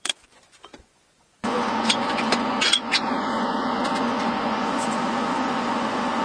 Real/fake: fake